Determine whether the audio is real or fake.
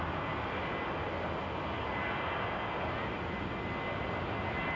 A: real